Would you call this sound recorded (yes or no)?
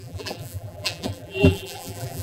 no